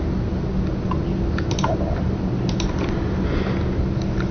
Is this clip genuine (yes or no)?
yes